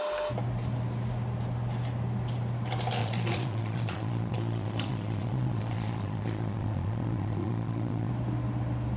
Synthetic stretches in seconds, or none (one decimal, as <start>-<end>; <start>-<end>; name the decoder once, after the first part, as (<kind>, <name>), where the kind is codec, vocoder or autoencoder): 3.0-8.1 (vocoder, Vocos)